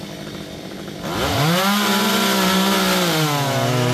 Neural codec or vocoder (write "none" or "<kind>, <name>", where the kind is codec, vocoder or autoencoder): none